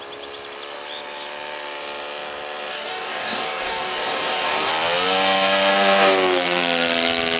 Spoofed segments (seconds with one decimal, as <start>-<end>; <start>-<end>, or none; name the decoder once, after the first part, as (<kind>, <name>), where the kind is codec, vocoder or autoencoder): 2.7-4.7 (codec, DAC)